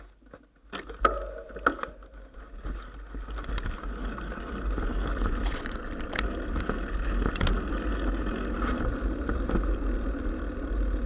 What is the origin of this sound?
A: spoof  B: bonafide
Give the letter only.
B